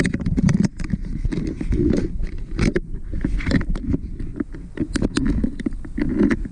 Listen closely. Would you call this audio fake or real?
real